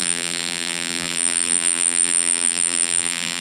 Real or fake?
fake